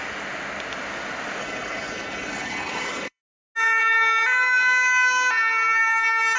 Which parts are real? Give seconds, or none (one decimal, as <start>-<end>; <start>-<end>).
0.0-1.4; 3.2-6.4